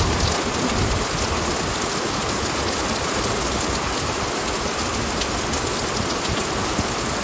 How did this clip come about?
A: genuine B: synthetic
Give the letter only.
A